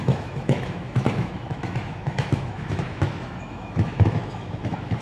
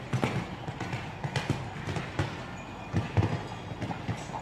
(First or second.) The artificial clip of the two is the first